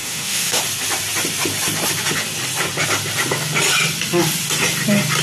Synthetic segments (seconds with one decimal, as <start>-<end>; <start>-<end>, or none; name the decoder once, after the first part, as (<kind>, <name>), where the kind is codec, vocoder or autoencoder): 0.0-0.6 (autoencoder, DAC-VAE)